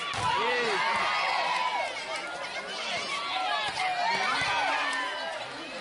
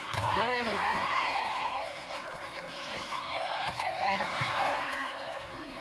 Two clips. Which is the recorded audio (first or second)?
first